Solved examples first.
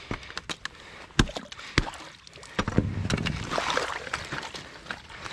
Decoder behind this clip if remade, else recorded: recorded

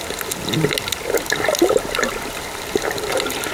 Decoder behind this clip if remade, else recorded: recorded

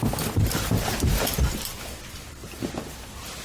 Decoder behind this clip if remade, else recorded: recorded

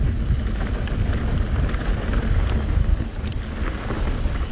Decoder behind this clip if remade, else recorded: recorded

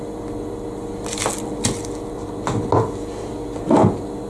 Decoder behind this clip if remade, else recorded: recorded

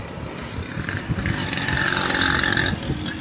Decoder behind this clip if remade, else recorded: recorded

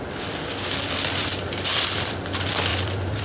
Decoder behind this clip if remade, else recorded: remade, vocoder, BigVGAN v2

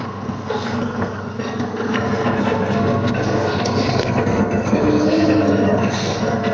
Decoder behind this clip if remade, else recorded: remade, codec, SNAC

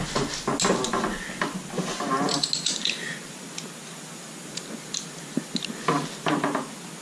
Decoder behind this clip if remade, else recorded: recorded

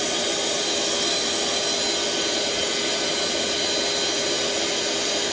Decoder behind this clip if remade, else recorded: recorded